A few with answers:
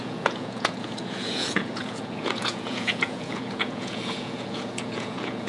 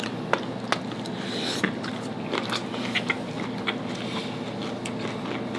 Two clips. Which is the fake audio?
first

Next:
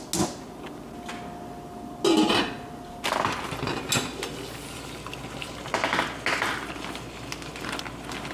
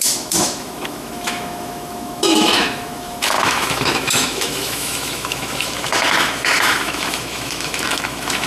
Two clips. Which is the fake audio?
second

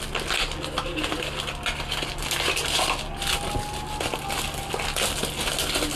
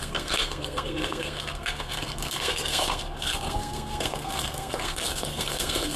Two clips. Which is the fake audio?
second